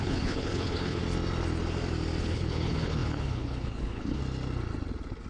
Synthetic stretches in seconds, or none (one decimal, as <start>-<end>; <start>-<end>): 0.0-1.0; 2.2-4.2

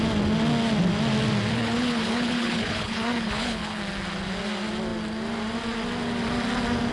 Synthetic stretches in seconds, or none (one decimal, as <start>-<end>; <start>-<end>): 1.5-3.8

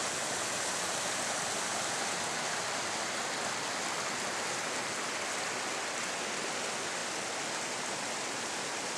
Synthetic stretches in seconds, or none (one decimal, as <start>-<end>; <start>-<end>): none

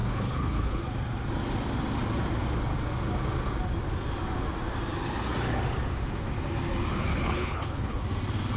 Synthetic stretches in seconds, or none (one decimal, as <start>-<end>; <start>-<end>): 0.0-0.8; 7.1-8.0

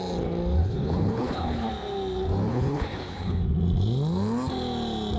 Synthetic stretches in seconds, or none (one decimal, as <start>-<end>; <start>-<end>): 0.6-1.7; 2.5-3.4

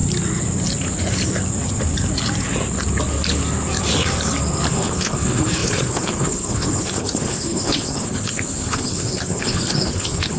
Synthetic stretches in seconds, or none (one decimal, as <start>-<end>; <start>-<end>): 4.7-10.4